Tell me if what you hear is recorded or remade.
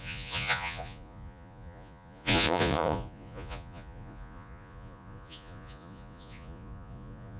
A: remade